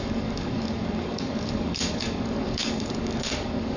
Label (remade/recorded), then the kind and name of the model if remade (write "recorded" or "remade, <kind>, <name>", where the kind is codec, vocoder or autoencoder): remade, codec, DAC